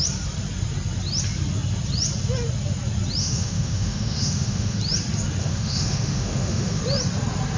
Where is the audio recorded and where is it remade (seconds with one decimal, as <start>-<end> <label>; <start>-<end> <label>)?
0.0-3.2 recorded; 3.2-4.8 remade; 4.8-5.4 recorded; 5.4-6.8 remade; 6.8-7.6 recorded